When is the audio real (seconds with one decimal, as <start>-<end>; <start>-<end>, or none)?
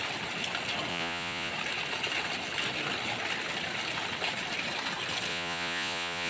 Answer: 0.0-0.9; 1.5-5.3